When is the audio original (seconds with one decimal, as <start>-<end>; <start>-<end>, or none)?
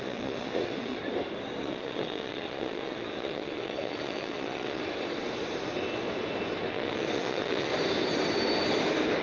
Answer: 1.0-1.6; 4.8-6.7; 7.7-9.2